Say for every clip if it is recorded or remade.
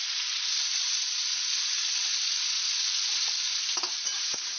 recorded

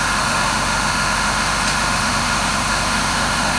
remade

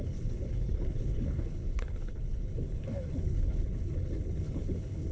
remade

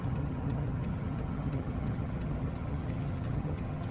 remade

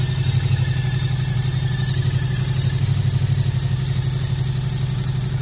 recorded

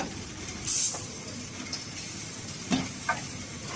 recorded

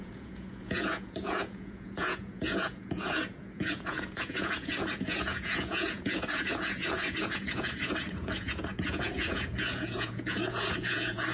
remade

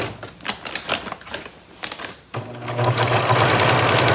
recorded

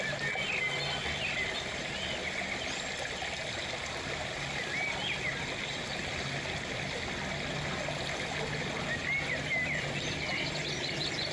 recorded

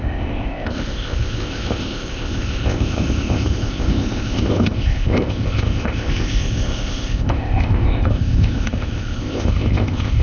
remade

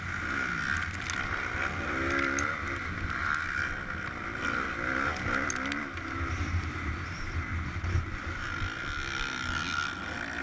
recorded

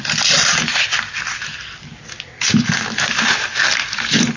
recorded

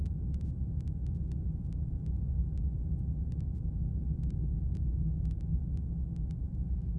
recorded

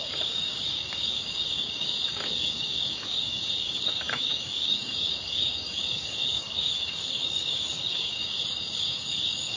remade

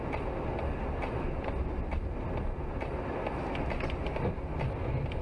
recorded